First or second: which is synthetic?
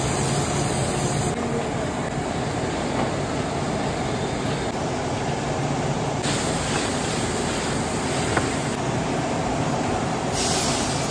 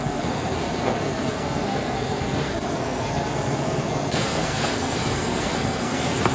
second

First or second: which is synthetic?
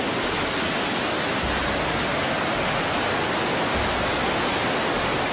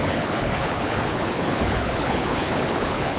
second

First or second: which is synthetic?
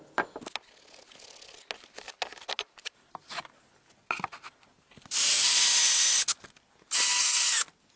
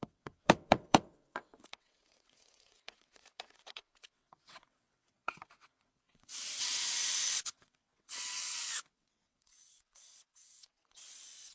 second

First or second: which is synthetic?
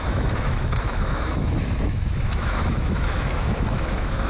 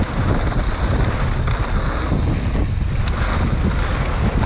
first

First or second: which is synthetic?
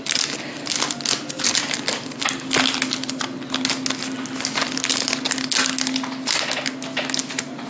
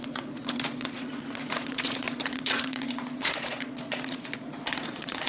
second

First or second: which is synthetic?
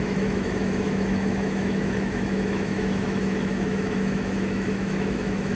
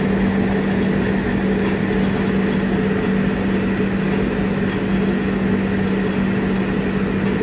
first